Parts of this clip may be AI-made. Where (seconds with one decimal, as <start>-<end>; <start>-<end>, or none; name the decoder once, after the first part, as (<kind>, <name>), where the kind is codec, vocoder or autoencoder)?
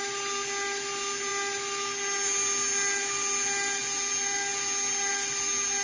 none